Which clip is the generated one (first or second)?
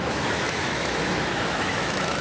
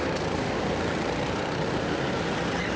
first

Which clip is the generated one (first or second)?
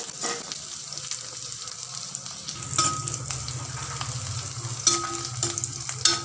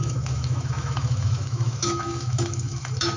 second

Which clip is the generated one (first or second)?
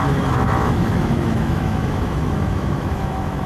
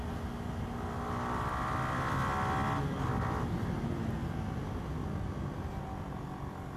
first